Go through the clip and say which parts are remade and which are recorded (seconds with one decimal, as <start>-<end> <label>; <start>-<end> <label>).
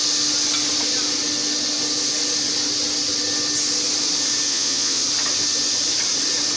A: 0.0-4.5 recorded; 4.5-5.0 remade; 5.0-6.6 recorded